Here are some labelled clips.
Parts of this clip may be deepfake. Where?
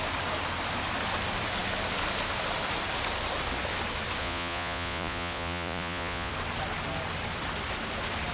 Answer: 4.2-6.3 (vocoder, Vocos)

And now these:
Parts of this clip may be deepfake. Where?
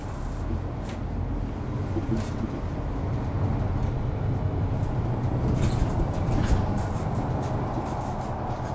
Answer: none